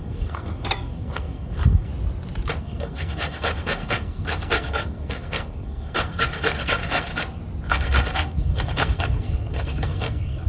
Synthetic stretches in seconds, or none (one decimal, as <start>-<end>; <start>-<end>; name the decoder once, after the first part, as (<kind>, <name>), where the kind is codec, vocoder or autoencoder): 0.0-1.9 (codec, SNAC); 2.6-7.1; 7.7-10.5